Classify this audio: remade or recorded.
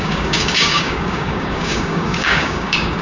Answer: remade